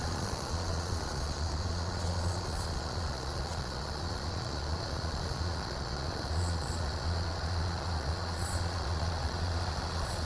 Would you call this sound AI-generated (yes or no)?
yes